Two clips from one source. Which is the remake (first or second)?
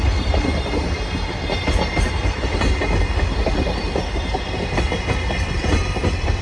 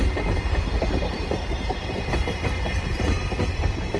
second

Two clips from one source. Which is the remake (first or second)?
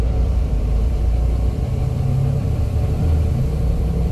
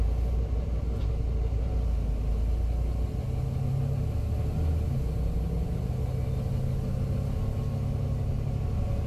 first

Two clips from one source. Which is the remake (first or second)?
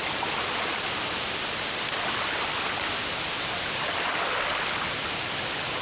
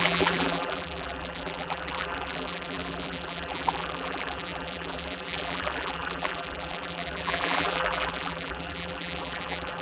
second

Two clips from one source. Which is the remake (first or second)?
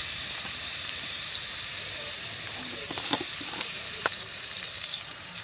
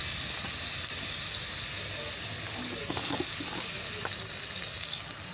first